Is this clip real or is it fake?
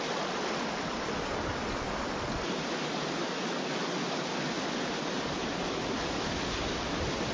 real